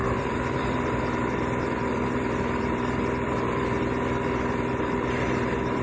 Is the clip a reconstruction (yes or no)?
yes